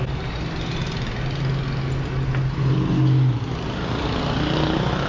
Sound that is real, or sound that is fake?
real